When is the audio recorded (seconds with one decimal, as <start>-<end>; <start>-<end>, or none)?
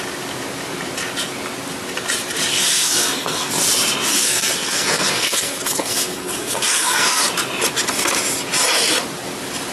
0.0-2.5; 3.5-4.1; 7.2-9.7